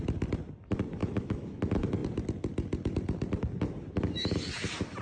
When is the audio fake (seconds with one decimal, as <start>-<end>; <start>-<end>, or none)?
1.0-1.6